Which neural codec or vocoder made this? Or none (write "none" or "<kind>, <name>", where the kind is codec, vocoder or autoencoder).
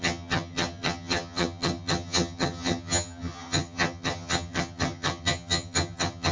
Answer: vocoder, HiFi-GAN